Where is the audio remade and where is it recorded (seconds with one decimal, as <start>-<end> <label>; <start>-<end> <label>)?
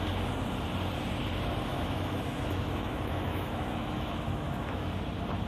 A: 0.0-1.7 recorded; 1.7-5.0 remade; 5.0-5.5 recorded